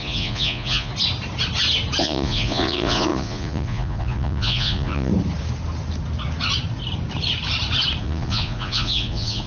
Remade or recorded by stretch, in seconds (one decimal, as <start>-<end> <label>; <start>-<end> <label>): 0.0-0.9 remade; 0.9-2.0 recorded; 2.0-5.1 remade; 5.1-8.0 recorded; 8.0-9.5 remade